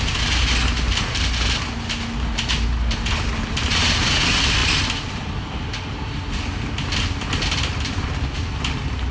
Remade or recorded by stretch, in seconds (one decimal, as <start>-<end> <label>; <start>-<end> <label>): 0.0-9.1 recorded